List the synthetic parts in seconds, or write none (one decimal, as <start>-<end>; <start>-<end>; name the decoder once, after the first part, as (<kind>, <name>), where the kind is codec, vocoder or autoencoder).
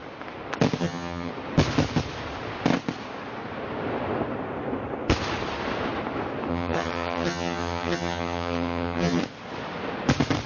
0.8-1.3 (vocoder, HiFi-GAN); 6.5-9.2